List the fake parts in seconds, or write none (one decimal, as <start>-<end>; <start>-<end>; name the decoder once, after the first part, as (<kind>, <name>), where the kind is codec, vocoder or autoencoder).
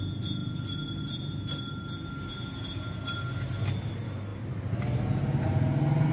none